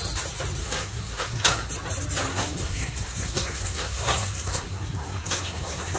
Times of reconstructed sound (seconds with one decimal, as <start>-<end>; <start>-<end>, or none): 0.6-1.7; 2.3-6.0